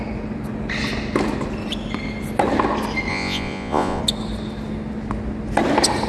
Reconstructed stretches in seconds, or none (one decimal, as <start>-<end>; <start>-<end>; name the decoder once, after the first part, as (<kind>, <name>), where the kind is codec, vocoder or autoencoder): 3.1-4.0 (vocoder, Vocos)